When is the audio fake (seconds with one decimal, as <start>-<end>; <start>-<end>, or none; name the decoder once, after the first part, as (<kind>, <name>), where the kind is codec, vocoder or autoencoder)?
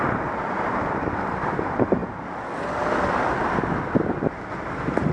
none